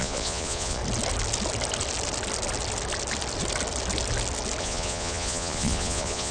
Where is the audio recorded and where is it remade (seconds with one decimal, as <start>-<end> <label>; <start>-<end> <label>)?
0.0-0.8 remade; 0.8-4.6 recorded; 4.6-6.3 remade